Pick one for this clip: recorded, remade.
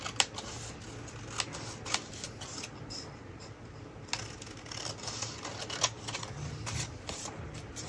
recorded